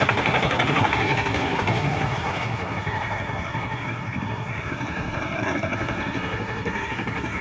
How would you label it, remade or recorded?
remade